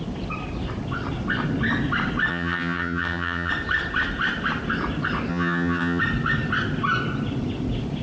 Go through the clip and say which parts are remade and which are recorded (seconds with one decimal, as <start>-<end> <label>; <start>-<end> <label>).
0.0-2.3 recorded; 2.3-3.5 remade; 3.5-5.3 recorded; 5.3-6.0 remade; 6.0-8.0 recorded